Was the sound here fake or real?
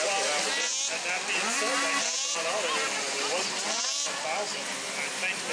real